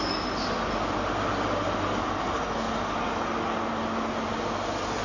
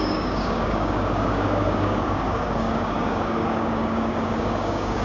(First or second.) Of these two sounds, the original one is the first